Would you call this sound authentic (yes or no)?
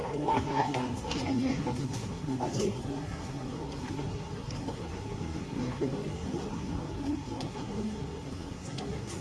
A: no